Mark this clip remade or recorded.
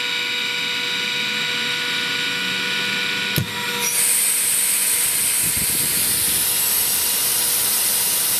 recorded